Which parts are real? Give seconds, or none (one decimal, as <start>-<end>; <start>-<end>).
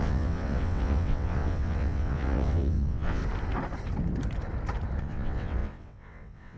3.2-5.0